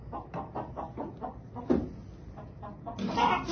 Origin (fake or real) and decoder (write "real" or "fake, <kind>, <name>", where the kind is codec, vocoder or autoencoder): real